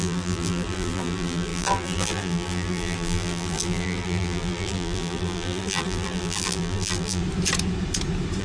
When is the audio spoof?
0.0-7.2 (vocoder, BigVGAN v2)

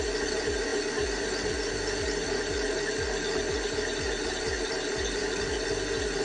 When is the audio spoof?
none

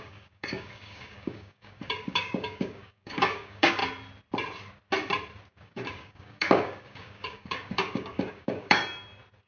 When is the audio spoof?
0.0-3.8 (codec, DAC); 5.5-8.8

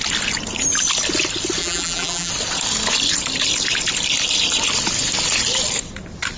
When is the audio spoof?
1.6-2.3 (vocoder, BigVGAN v2)

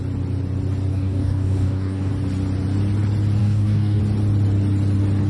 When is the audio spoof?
0.9-2.1 (codec, DAC); 3.4-4.0

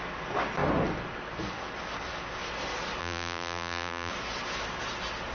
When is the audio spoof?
3.0-4.1 (vocoder, BigVGAN v2)

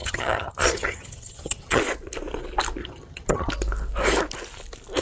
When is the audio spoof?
0.0-1.8 (vocoder, HiFi-GAN); 2.8-3.5

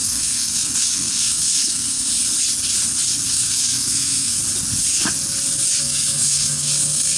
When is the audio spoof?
0.0-2.1 (codec, SNAC); 3.3-4.4; 5.8-7.2